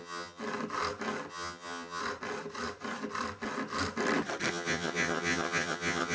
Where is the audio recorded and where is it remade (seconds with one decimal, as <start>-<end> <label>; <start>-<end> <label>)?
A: 0.0-0.4 remade; 0.4-1.3 recorded; 1.3-2.0 remade; 2.0-4.5 recorded; 4.5-6.1 remade